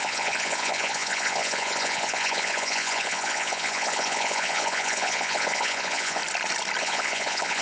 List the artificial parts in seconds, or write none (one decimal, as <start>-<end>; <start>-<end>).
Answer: 0.0-6.2; 6.8-7.6